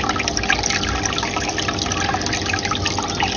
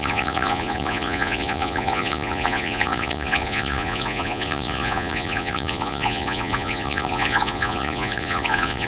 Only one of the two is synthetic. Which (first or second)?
second